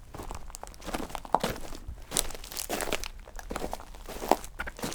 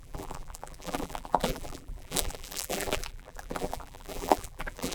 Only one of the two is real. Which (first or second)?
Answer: first